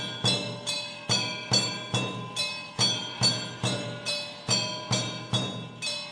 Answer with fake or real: real